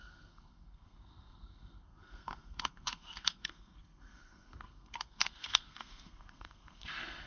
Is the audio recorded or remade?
remade